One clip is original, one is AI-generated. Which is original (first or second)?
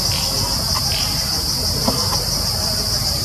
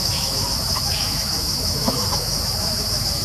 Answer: first